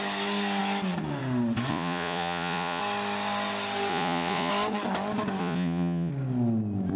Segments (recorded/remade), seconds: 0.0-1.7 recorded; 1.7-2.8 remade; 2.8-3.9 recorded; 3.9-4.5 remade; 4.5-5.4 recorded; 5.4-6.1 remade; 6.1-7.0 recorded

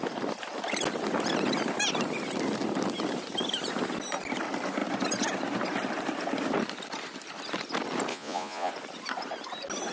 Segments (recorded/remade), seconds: 0.0-8.1 recorded; 8.1-8.7 remade; 8.7-9.9 recorded

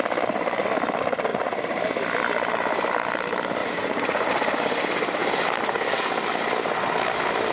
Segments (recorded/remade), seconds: 0.0-1.3 recorded; 1.3-1.8 remade; 1.8-3.6 recorded; 3.6-4.3 remade; 4.3-7.5 recorded